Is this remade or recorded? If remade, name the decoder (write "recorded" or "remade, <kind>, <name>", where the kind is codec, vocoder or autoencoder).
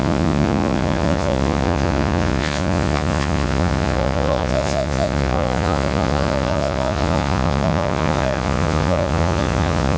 remade, vocoder, Vocos